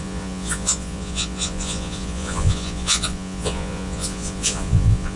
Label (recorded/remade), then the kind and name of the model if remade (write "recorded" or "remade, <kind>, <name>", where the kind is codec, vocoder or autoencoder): remade, vocoder, Vocos